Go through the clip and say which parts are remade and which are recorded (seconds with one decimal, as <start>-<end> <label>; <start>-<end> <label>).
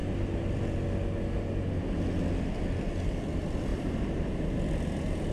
0.0-3.7 recorded; 3.7-4.5 remade; 4.5-5.3 recorded